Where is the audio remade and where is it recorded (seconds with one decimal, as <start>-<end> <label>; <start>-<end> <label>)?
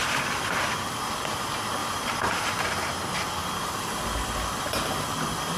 0.0-1.8 recorded; 1.8-2.5 remade; 2.5-3.4 recorded; 3.4-4.0 remade; 4.0-5.6 recorded